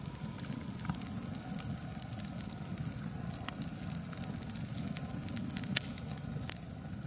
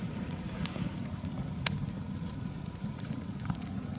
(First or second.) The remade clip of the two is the second